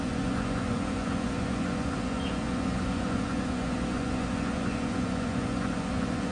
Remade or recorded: remade